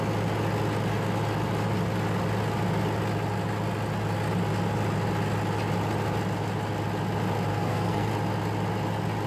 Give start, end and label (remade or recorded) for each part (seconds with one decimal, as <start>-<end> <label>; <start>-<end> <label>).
0.0-7.5 recorded; 7.5-8.1 remade; 8.1-9.3 recorded